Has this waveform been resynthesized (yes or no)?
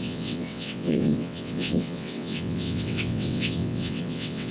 yes